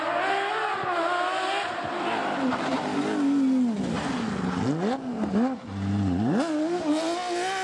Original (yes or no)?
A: yes